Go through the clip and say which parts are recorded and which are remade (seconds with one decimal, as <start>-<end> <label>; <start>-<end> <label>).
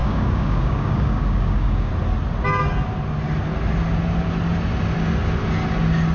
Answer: 0.0-1.9 remade; 1.9-6.1 recorded